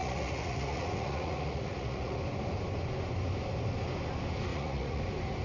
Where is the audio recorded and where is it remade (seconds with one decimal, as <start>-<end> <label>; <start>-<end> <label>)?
0.0-2.2 remade; 2.2-4.5 recorded; 4.5-5.0 remade; 5.0-5.4 recorded